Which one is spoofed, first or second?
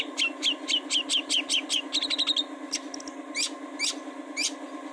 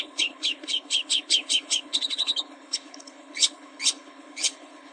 second